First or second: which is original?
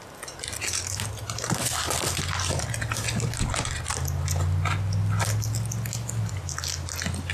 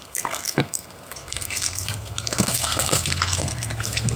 first